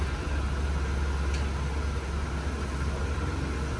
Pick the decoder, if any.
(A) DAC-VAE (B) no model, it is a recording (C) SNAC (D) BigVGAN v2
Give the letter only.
B